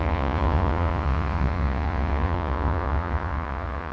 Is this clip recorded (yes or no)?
no